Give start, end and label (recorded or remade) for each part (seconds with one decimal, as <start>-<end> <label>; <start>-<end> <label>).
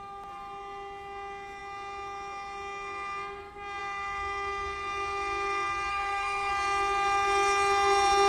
0.0-5.9 recorded; 5.9-6.5 remade; 6.5-8.3 recorded